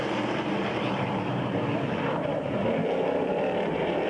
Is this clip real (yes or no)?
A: no